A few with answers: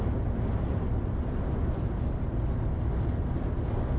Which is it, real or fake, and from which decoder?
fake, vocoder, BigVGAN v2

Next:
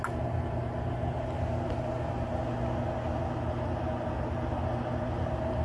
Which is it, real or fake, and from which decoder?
real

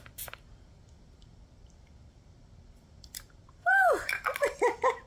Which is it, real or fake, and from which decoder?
fake, vocoder, BigVGAN v2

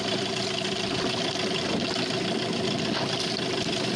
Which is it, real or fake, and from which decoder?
real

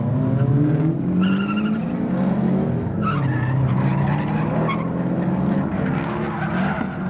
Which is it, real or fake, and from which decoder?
real